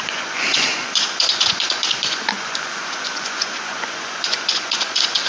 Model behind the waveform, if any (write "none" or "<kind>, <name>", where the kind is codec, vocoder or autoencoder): vocoder, Vocos